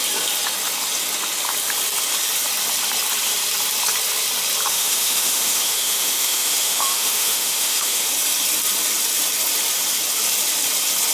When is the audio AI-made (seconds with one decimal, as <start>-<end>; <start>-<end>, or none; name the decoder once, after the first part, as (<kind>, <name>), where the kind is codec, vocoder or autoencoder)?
4.7-8.1 (autoencoder, DAC-VAE)